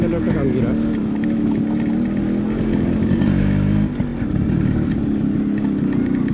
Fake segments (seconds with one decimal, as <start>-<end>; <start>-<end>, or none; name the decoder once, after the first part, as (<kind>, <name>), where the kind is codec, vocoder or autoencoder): 1.0-1.6 (autoencoder, DAC-VAE)